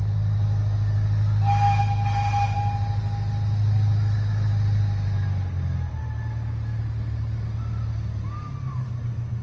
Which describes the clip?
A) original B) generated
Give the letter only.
A